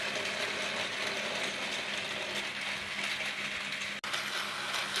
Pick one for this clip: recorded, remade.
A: recorded